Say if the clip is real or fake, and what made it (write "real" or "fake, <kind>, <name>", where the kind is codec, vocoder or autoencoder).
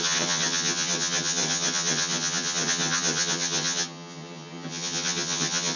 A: fake, vocoder, HiFi-GAN